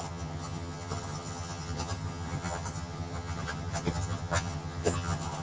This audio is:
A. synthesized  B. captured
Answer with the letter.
A